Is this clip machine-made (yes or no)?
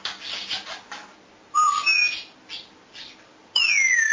no